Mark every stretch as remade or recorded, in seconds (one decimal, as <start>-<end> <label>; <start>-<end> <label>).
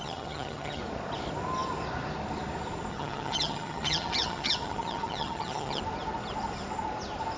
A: 0.0-0.8 remade; 0.8-2.9 recorded; 2.9-5.8 remade; 5.8-7.4 recorded